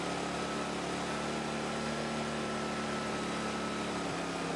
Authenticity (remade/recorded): recorded